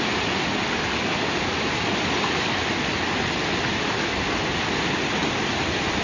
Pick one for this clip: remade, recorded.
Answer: recorded